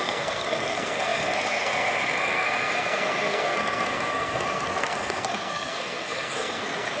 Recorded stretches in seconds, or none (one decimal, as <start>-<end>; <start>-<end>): none